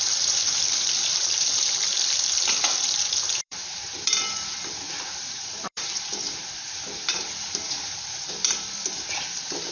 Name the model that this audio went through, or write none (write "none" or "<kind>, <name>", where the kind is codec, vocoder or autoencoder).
vocoder, BigVGAN v2